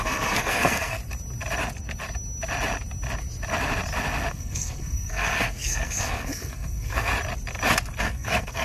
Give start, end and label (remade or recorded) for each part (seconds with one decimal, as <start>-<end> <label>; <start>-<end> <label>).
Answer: 0.0-1.0 remade; 1.0-4.3 recorded; 4.3-7.1 remade; 7.1-8.0 recorded; 8.0-8.6 remade